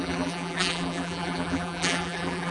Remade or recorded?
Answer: remade